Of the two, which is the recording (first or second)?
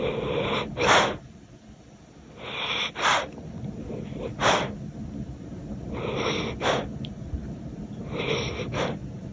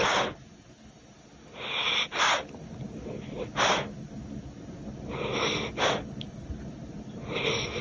second